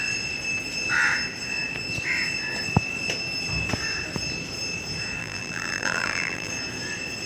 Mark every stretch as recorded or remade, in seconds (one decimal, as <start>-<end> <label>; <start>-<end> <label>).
0.0-5.2 recorded; 5.2-6.5 remade; 6.5-7.3 recorded